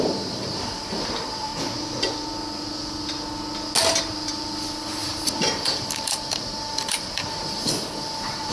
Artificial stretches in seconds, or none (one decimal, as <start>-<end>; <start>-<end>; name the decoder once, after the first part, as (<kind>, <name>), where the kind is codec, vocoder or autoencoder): 0.0-1.5 (vocoder, BigVGAN v2); 4.0-8.5